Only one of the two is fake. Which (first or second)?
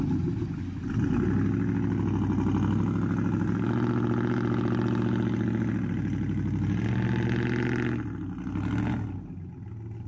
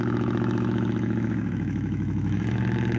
second